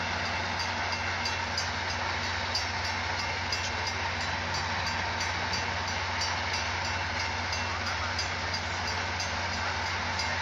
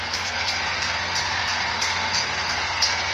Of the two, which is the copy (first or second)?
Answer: second